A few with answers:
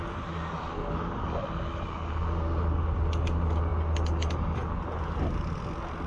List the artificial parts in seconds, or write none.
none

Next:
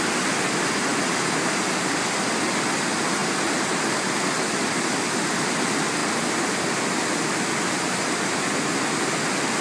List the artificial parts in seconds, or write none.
none

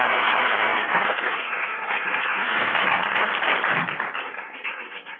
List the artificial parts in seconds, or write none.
0.0-3.3 (codec, SNAC); 4.2-5.2

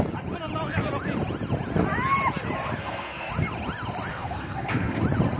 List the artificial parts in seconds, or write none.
2.8-3.3 (codec, SNAC); 4.1-5.0